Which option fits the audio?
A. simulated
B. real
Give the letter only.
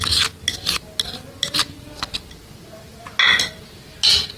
B